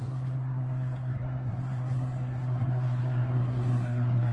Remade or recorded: remade